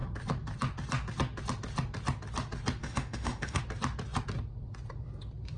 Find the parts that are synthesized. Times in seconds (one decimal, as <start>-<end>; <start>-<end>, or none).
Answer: 2.8-3.6